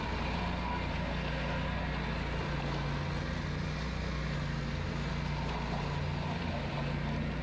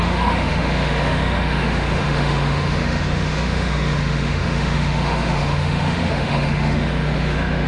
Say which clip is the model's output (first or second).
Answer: second